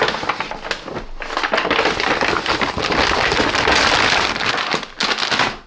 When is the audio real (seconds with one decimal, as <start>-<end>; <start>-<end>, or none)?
0.0-5.7